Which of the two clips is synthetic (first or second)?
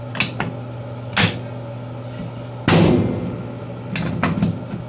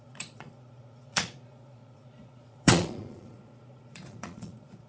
second